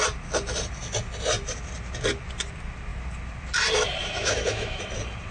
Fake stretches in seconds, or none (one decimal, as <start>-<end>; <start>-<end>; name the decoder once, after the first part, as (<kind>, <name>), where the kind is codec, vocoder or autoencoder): 4.0-4.8 (autoencoder, DAC-VAE)